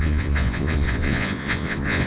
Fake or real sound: fake